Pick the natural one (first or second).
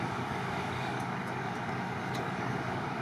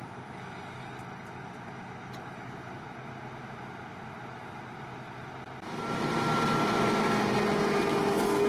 second